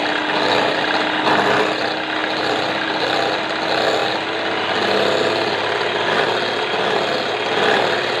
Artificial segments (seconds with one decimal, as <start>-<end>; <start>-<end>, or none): 2.2-3.4